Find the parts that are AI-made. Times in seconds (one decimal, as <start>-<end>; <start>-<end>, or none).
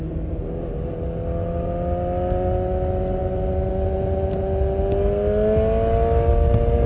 none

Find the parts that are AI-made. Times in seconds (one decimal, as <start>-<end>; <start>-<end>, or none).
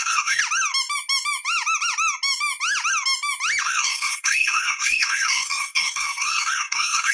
0.0-0.4; 3.6-7.1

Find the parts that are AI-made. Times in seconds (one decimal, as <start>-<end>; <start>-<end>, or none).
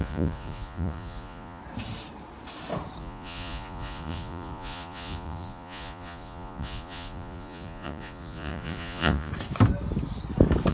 0.0-1.6; 3.0-9.3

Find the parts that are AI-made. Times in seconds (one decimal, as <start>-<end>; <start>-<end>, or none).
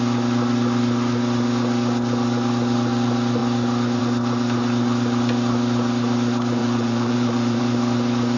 6.6-7.6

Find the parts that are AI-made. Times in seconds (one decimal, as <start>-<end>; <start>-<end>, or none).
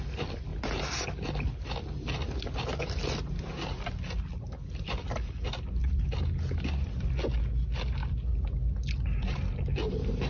none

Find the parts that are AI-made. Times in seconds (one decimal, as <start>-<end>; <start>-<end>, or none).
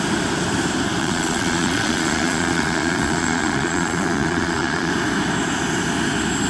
1.0-4.9